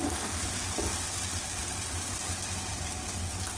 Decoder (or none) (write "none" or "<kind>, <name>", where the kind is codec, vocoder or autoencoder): none